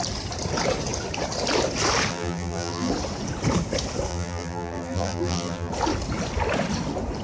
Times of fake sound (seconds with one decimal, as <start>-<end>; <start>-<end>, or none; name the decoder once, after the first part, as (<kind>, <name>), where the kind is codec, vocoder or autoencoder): 2.1-2.9 (vocoder, BigVGAN v2); 4.1-5.7